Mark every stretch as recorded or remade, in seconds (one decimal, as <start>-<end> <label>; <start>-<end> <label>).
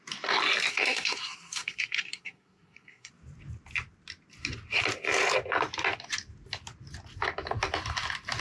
0.0-0.7 recorded; 0.7-3.1 remade; 3.1-8.4 recorded